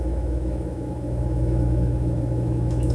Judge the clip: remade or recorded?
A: remade